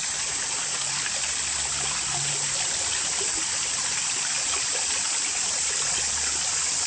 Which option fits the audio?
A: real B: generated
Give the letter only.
A